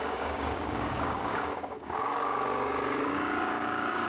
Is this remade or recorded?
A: remade